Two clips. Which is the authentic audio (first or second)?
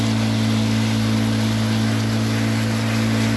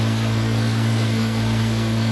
first